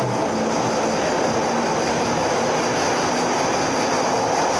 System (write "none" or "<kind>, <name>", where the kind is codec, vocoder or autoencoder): none